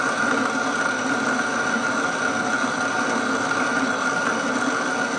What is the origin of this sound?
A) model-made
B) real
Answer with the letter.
B